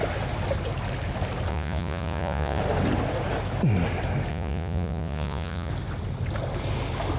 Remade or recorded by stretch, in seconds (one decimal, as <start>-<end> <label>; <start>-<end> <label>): 0.0-1.5 recorded; 1.5-2.6 remade; 2.6-4.3 recorded; 4.3-5.7 remade; 5.7-7.2 recorded